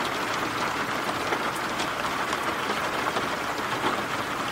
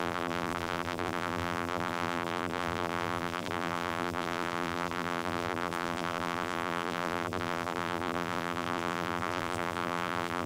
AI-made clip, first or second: second